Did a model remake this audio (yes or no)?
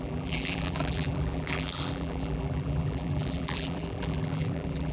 yes